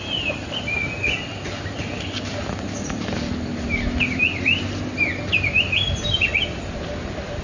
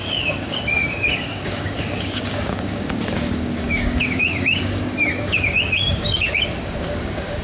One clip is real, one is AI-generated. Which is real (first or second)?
first